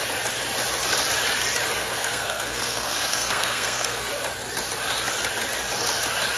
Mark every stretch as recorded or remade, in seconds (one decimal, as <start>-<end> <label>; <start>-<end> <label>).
0.0-1.8 recorded; 1.8-4.1 remade; 4.1-6.4 recorded